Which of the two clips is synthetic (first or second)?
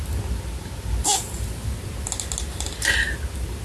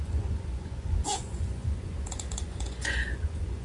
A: second